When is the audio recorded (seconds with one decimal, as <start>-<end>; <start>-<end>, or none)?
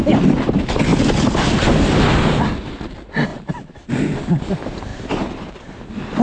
0.0-3.3; 3.9-4.9; 5.7-6.2